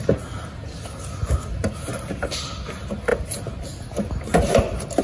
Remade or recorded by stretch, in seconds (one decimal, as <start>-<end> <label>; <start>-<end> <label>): 0.0-5.0 recorded